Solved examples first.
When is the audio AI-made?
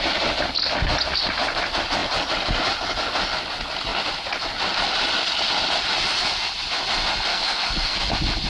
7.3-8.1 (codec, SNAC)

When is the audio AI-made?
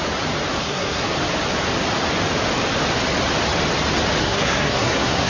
0.6-1.0 (codec, SNAC); 4.2-5.3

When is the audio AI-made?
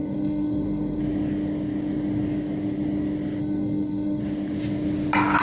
0.0-1.0 (codec, SNAC); 3.4-4.2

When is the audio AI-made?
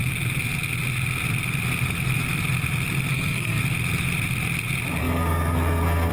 3.1-3.6 (codec, SNAC); 5.0-6.1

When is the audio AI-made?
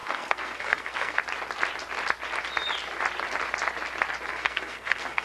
0.0-1.2 (codec, SNAC); 4.3-5.2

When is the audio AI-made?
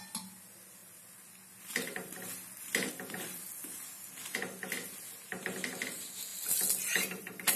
none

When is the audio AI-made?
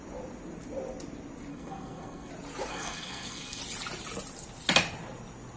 1.5-2.3 (codec, SNAC); 2.7-3.6